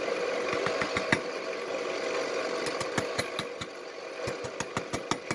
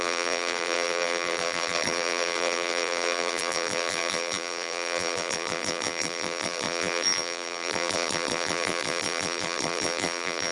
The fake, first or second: second